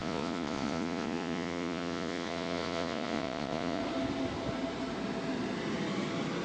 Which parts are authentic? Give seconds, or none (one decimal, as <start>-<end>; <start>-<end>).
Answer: 3.8-6.4